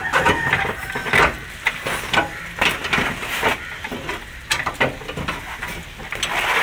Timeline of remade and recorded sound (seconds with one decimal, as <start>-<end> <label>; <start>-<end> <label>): 0.0-6.6 recorded